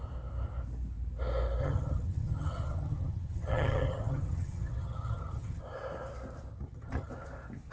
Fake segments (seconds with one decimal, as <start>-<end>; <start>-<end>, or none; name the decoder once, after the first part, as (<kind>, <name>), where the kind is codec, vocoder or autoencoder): 1.6-5.6 (vocoder, HiFi-GAN); 6.5-7.1